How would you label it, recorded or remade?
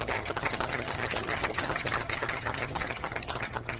remade